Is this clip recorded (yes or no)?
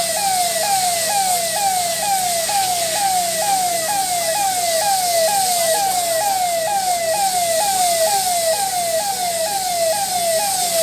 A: yes